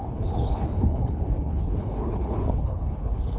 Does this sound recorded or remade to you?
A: remade